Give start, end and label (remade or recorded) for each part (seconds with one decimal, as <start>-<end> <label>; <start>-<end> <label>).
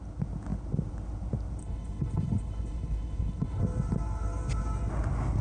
0.0-1.6 recorded; 1.6-3.6 remade; 3.6-5.4 recorded